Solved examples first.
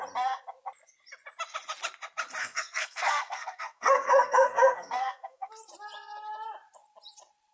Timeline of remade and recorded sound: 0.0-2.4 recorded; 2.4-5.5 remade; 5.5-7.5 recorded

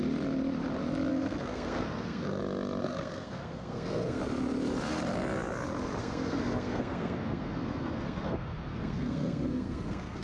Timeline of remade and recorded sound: 0.0-1.1 recorded; 1.1-2.4 remade; 2.4-2.8 recorded; 2.8-4.2 remade; 4.2-6.0 recorded; 6.0-10.2 remade

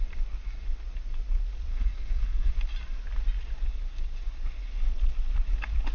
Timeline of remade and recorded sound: 0.0-1.7 recorded; 1.7-2.5 remade; 2.5-5.9 recorded

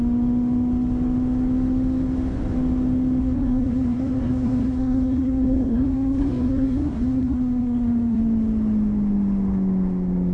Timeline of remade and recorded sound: 0.0-3.2 recorded; 3.2-8.2 remade; 8.2-10.3 recorded

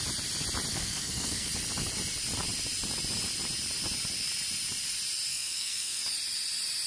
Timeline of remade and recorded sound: 0.0-0.7 recorded; 0.7-1.5 remade; 1.5-5.3 recorded; 5.3-6.0 remade; 6.0-6.9 recorded

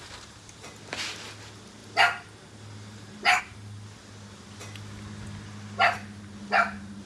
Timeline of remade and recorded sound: 0.0-7.1 recorded